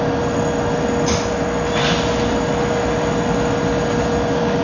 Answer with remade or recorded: recorded